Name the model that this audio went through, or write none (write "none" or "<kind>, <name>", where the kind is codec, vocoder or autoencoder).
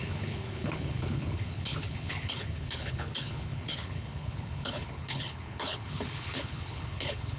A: codec, HILCodec